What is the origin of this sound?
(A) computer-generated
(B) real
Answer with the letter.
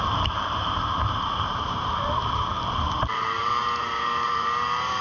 A